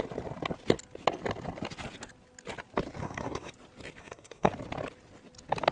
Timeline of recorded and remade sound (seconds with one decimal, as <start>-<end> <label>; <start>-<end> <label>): 0.0-3.0 recorded; 3.0-3.5 remade; 3.5-4.0 recorded; 4.0-4.5 remade; 4.5-5.7 recorded